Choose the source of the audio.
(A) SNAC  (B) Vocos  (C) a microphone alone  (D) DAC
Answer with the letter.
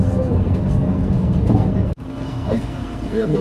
A